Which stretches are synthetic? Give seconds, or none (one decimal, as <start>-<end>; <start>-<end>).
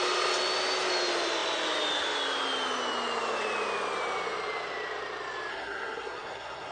5.5-6.7